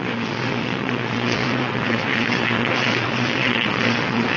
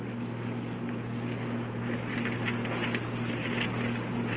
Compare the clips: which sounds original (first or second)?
second